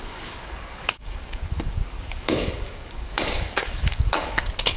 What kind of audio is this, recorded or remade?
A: remade